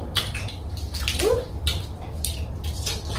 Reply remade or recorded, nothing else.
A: recorded